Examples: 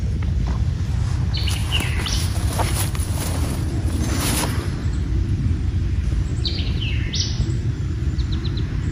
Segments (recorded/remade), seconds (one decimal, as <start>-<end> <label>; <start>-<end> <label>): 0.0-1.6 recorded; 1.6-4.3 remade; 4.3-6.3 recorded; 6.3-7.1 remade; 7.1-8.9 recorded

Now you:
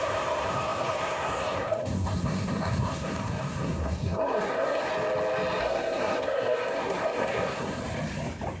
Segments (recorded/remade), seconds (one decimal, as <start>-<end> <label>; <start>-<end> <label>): 0.0-4.9 remade; 4.9-5.6 recorded; 5.6-7.8 remade; 7.8-8.6 recorded

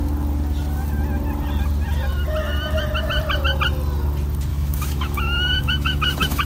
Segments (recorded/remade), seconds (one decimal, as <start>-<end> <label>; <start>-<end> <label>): 0.0-4.5 recorded; 4.5-6.5 remade

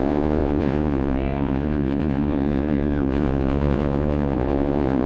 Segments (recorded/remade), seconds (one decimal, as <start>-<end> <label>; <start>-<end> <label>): 0.0-5.1 remade

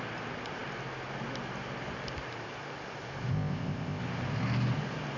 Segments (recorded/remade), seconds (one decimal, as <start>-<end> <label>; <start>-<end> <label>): 0.0-3.3 recorded; 3.3-4.0 remade; 4.0-5.2 recorded

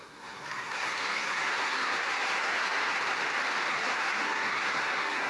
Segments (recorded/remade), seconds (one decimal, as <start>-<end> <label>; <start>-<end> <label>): 0.0-3.0 remade; 3.0-3.7 recorded; 3.7-5.3 remade

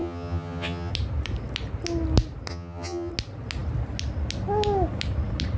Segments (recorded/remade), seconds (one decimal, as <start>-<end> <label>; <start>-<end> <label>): 0.0-0.9 remade; 0.9-2.5 recorded; 2.5-3.1 remade; 3.1-5.6 recorded